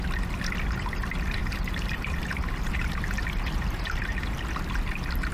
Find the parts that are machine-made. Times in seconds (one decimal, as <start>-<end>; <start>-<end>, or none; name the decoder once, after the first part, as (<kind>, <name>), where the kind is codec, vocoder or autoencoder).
1.4-4.6 (vocoder, BigVGAN v2)